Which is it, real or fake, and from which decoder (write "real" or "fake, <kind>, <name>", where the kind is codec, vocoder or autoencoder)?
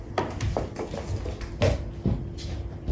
real